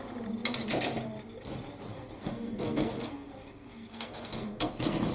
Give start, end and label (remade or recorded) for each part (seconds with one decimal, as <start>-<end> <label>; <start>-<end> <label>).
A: 0.0-1.9 recorded; 1.9-5.1 remade